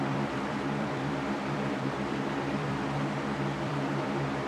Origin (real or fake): fake